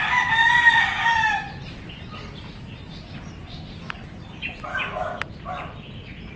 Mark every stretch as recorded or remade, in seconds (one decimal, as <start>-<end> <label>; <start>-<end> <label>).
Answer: 0.0-4.7 recorded; 4.7-5.2 remade; 5.2-6.4 recorded